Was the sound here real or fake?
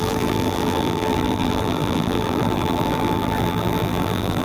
fake